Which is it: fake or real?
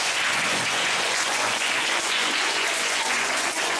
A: fake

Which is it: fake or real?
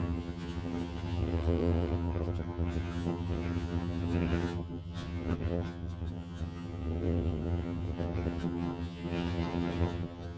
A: fake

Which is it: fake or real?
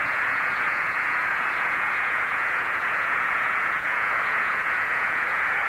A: fake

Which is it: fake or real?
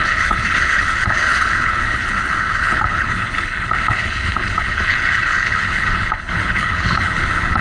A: fake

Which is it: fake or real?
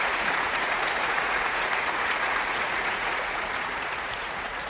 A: fake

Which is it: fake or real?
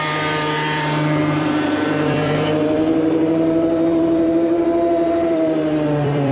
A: fake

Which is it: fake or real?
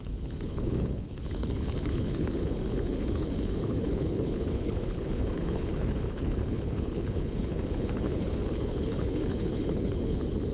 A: fake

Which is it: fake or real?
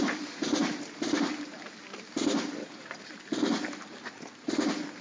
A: real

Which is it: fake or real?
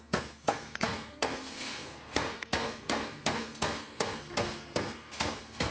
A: fake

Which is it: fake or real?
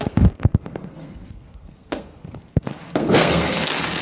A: fake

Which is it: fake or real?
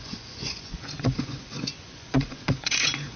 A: fake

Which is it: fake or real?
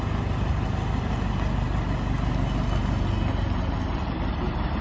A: real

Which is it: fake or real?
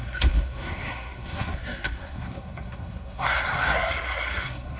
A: fake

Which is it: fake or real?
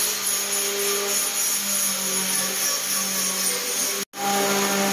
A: real